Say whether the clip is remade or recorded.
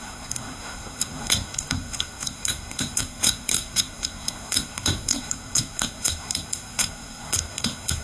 remade